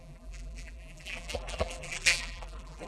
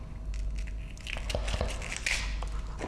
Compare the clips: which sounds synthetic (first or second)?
first